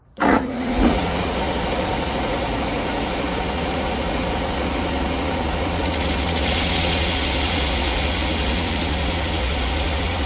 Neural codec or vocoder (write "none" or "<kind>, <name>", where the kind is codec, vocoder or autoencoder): vocoder, Vocos